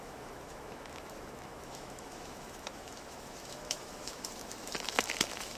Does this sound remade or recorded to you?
remade